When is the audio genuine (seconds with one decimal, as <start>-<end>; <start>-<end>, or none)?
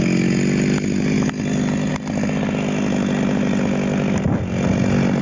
0.0-5.2